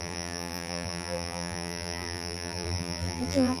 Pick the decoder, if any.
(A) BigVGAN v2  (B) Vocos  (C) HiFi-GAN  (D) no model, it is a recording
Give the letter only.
A